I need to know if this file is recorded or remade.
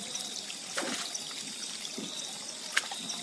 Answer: recorded